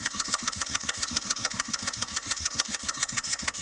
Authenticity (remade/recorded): remade